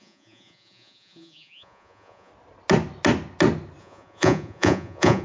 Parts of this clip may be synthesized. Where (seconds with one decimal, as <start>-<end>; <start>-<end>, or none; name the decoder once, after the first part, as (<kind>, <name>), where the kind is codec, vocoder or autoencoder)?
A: 0.0-2.3 (vocoder, Vocos); 3.8-5.2